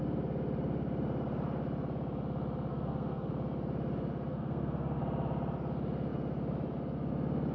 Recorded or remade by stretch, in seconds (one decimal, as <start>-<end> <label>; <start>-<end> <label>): 0.0-2.7 recorded; 2.7-3.3 remade; 3.3-4.3 recorded; 4.3-5.0 remade; 5.0-7.5 recorded